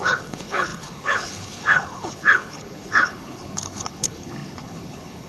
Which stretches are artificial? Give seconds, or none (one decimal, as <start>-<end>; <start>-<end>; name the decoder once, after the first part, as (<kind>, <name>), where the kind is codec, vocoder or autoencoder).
0.0-5.3 (codec, HILCodec)